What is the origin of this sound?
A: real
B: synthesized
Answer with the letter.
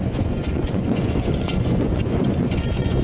B